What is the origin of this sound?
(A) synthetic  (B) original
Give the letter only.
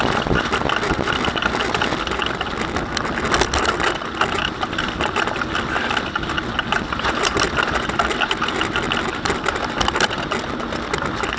B